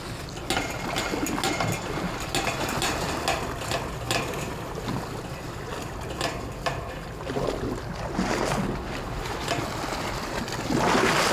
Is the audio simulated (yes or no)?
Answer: no